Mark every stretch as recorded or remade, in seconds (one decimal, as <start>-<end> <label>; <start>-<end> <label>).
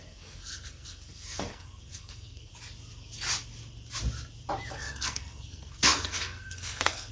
0.0-2.5 remade; 2.5-4.7 recorded; 4.7-7.1 remade